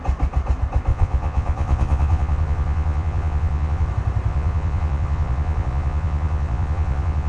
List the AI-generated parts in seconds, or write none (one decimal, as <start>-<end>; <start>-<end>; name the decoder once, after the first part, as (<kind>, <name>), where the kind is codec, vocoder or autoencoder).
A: 0.9-3.9 (vocoder, Vocos); 4.3-7.3